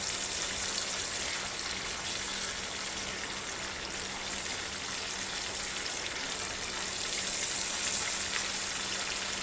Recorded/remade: recorded